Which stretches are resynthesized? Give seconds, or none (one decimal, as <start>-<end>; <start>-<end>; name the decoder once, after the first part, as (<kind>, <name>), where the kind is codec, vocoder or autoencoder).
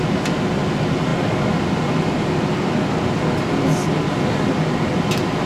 none